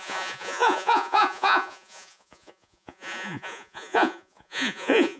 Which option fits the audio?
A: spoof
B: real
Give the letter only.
A